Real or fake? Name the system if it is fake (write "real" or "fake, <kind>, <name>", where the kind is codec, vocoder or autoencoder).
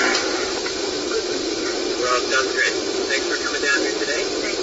real